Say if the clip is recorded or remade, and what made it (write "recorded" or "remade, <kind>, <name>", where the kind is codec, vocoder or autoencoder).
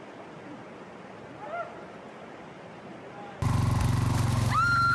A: recorded